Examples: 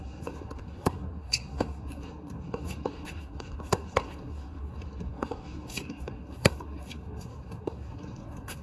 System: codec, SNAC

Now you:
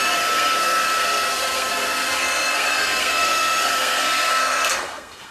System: codec, SNAC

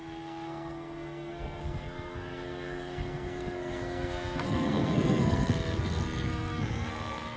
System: codec, SNAC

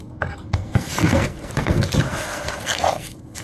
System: codec, SNAC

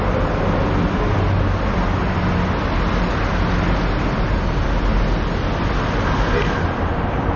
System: none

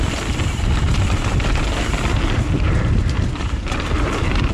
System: none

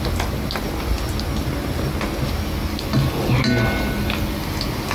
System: none